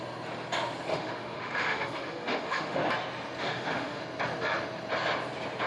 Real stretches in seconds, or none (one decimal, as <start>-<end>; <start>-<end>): 0.0-0.9; 2.8-3.4; 4.0-5.7